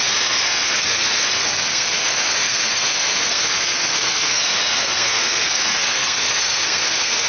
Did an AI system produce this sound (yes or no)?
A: yes